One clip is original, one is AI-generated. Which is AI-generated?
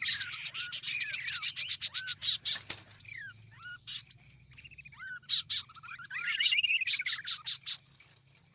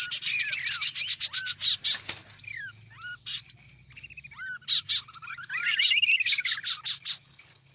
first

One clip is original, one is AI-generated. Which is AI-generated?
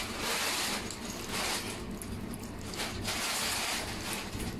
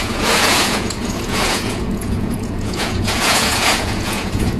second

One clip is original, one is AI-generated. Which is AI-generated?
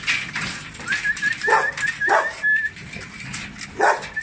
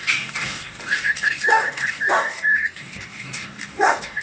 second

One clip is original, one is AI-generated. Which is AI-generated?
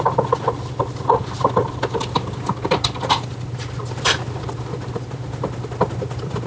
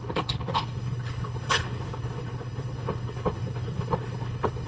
second